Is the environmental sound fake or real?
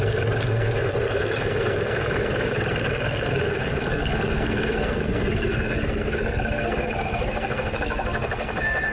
fake